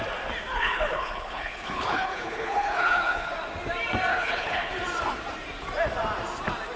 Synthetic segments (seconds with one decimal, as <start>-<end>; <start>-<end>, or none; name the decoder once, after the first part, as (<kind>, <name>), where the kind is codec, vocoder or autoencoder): 0.5-3.3 (codec, HILCodec); 4.1-4.7